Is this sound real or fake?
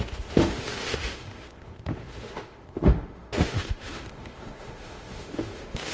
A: fake